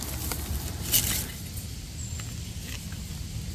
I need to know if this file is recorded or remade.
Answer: recorded